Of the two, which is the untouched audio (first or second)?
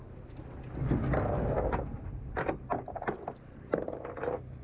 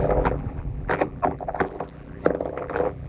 first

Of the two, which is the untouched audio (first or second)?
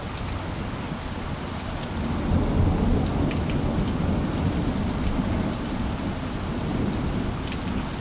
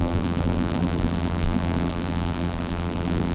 first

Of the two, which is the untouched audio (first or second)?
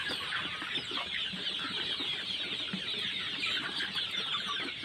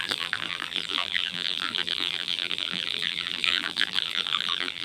first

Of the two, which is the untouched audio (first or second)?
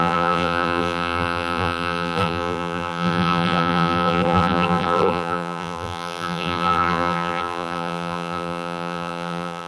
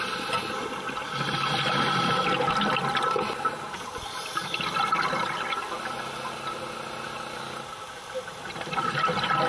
second